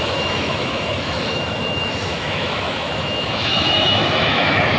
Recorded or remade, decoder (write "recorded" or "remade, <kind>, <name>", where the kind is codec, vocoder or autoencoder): remade, autoencoder, DAC-VAE